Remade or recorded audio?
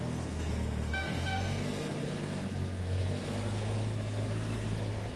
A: remade